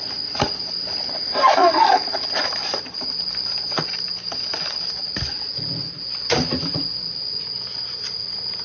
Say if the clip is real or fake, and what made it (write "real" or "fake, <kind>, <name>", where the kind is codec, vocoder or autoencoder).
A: real